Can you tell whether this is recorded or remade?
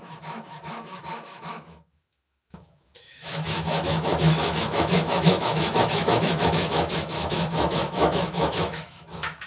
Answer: remade